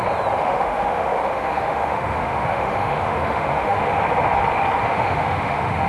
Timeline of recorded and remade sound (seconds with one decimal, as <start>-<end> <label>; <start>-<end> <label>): 0.0-0.4 recorded; 0.4-3.9 remade; 3.9-4.9 recorded; 4.9-5.9 remade

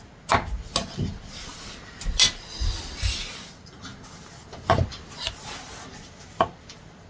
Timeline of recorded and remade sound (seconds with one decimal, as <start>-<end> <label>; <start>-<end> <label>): 0.0-7.1 recorded

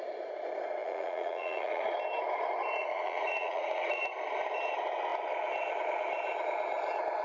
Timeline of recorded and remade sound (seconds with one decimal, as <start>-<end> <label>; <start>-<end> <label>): 0.0-0.8 recorded; 0.8-2.0 remade; 2.0-2.8 recorded; 2.8-4.1 remade; 4.1-7.2 recorded